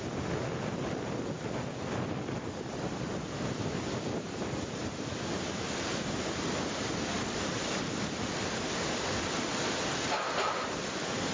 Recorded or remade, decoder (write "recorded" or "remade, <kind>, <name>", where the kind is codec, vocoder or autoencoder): recorded